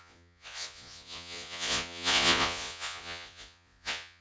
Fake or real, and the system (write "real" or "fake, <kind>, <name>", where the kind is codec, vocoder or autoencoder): fake, vocoder, Vocos